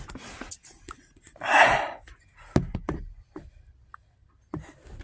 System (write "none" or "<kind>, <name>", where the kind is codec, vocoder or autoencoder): none